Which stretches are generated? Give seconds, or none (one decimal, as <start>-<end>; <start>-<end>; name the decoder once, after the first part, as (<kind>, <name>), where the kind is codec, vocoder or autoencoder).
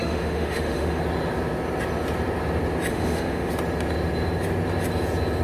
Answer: 0.0-1.0 (autoencoder, DAC-VAE); 2.9-3.5